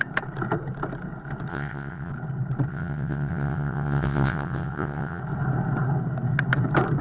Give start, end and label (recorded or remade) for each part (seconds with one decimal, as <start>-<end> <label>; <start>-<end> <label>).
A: 0.0-1.5 recorded; 1.5-2.1 remade; 2.1-2.7 recorded; 2.7-5.2 remade; 5.2-7.0 recorded